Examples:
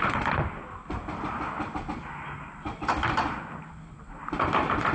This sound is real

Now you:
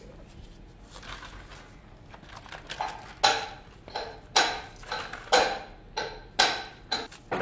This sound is real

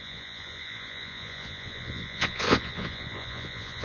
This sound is fake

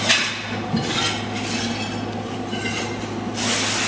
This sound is real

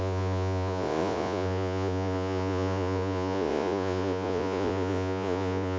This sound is fake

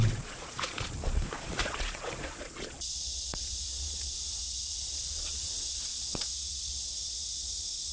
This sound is fake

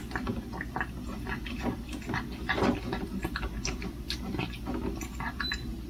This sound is real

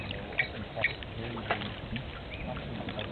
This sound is real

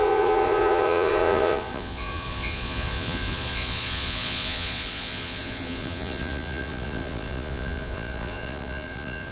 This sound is fake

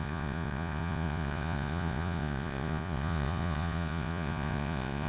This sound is fake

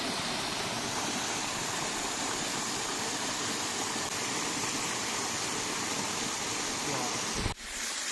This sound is real